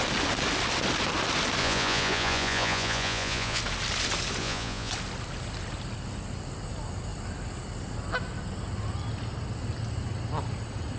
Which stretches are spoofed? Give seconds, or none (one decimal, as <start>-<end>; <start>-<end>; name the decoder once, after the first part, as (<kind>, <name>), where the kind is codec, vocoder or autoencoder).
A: 1.6-3.6 (vocoder, Vocos); 4.4-4.9